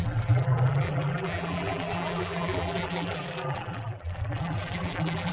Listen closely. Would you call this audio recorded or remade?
remade